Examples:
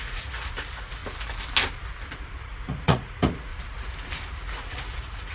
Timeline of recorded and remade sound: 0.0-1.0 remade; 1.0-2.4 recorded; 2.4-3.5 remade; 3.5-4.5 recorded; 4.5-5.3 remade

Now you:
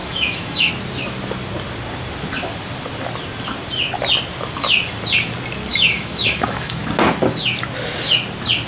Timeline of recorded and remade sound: 0.0-0.7 remade; 0.7-5.7 recorded; 5.7-6.8 remade; 6.8-8.7 recorded

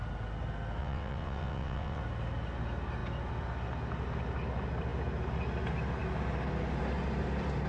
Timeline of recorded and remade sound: 0.0-0.8 recorded; 0.8-2.0 remade; 2.0-7.7 recorded

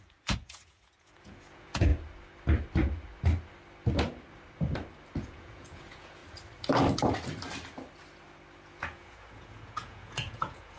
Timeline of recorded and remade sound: 0.0-1.9 remade; 1.9-5.2 recorded; 5.2-6.2 remade; 6.2-8.8 recorded; 8.8-10.8 remade

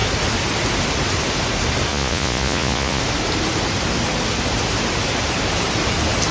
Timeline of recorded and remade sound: 0.0-1.9 recorded; 1.9-3.0 remade; 3.0-6.3 recorded